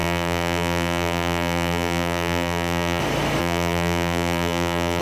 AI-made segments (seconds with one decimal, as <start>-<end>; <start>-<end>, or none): 0.0-3.0; 3.4-5.0